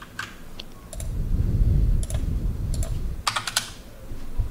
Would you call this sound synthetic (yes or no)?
no